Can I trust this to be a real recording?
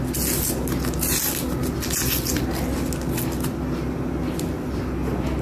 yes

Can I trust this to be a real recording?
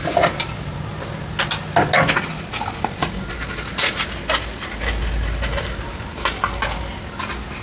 yes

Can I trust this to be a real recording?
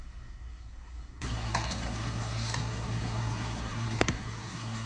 no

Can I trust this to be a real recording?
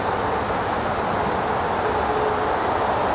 yes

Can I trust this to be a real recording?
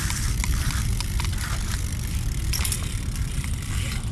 yes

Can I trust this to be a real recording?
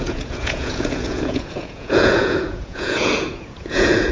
no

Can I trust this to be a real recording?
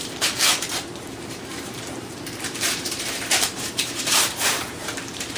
no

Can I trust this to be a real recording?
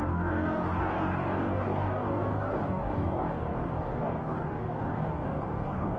no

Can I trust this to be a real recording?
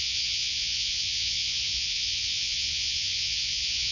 no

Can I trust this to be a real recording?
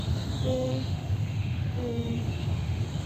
no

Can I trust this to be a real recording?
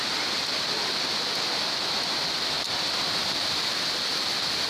yes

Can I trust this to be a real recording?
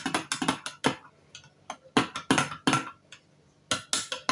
yes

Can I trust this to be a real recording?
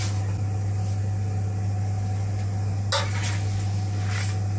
yes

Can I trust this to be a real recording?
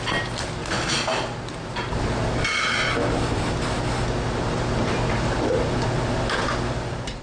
yes